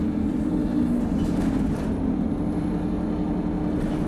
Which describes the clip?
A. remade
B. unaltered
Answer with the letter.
B